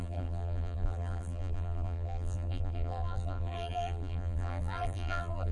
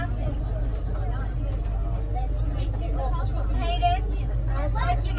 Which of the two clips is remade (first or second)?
first